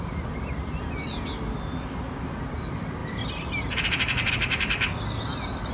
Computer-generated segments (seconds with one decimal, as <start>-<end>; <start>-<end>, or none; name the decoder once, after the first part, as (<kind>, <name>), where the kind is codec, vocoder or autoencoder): 3.0-4.3 (vocoder, BigVGAN v2)

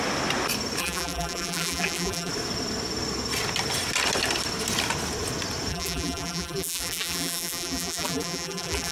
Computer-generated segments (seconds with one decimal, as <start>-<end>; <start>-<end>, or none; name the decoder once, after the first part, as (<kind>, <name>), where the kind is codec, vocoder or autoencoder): 0.8-2.3 (vocoder, BigVGAN v2); 5.7-8.9

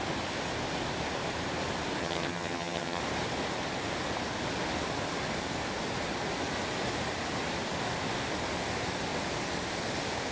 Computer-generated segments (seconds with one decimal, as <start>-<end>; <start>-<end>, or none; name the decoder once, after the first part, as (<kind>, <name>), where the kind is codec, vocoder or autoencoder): 2.0-3.0 (vocoder, HiFi-GAN)

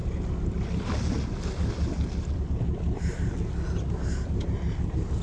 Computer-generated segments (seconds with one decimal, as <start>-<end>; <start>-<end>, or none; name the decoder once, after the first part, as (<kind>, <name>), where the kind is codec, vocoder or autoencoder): none

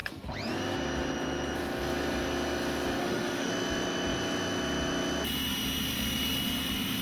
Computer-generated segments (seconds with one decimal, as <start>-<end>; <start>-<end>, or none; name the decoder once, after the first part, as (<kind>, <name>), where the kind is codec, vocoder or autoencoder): 3.0-3.5 (autoencoder, DAC-VAE)

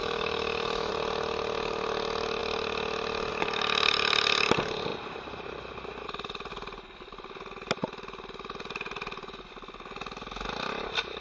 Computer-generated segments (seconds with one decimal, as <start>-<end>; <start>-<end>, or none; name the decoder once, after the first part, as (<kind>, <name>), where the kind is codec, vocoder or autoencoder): 0.0-0.9 (autoencoder, DAC-VAE)

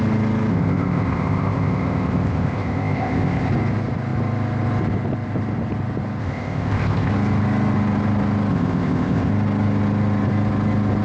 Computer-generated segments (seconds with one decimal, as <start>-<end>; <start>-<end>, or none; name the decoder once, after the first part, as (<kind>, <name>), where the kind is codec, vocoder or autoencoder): 0.5-3.5 (codec, ZipCodec); 6.2-7.1; 8.5-9.3